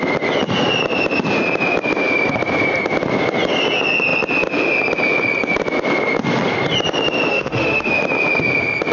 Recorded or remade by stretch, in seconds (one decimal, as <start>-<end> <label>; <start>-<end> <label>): 0.0-7.3 recorded; 7.3-7.9 remade; 7.9-8.9 recorded